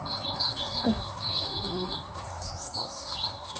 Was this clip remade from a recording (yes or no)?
yes